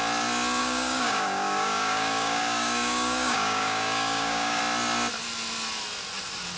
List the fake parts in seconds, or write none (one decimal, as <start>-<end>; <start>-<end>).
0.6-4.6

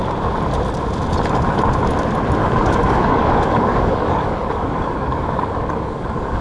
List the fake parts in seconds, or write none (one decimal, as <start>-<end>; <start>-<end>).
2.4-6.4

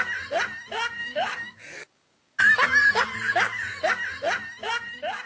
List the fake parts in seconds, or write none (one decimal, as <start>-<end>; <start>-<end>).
1.0-2.4

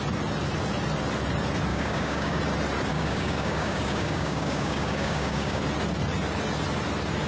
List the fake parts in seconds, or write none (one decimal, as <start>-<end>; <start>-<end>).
1.7-2.4; 2.9-5.6

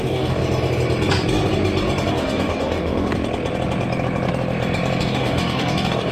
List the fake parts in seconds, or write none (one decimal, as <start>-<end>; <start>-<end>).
0.0-0.4; 2.1-3.1; 5.0-6.1

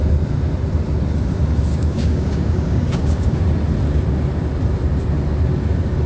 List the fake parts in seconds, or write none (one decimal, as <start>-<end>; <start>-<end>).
1.7-3.4

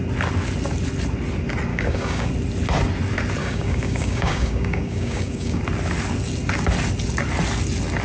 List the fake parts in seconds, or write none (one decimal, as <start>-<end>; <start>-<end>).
1.7-2.3; 3.4-5.6

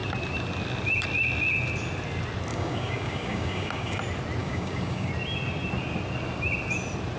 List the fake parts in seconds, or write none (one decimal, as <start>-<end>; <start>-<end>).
2.5-4.0; 4.4-5.1